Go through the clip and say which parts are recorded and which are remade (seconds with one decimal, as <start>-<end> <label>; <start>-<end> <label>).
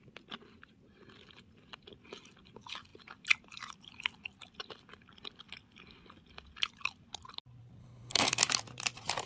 0.0-7.8 recorded; 7.8-8.4 remade; 8.4-9.3 recorded